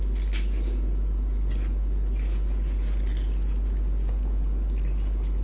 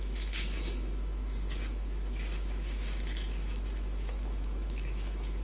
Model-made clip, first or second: second